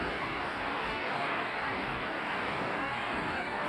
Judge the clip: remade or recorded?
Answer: remade